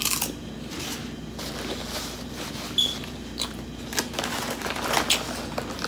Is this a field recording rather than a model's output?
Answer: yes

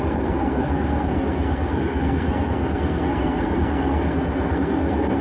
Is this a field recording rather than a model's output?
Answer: no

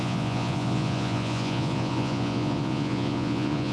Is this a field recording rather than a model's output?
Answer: no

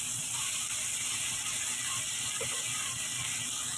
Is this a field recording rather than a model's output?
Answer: yes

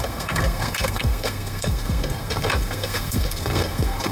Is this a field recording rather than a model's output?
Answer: no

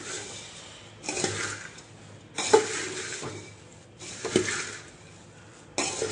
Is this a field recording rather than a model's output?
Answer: yes